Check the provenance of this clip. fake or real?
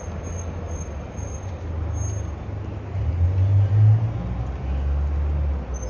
real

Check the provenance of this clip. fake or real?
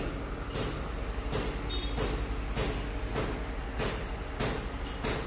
real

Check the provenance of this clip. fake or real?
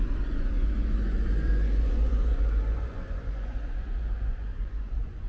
fake